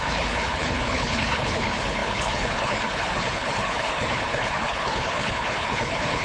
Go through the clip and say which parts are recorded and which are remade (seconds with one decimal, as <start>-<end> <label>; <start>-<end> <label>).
0.0-6.2 remade